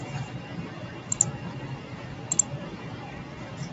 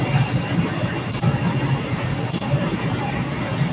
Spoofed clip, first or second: second